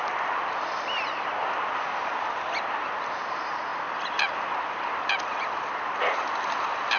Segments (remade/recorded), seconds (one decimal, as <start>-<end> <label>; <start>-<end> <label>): 0.0-7.0 recorded